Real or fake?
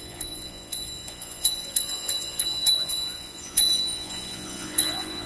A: fake